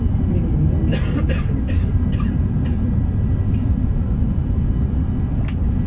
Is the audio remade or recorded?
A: recorded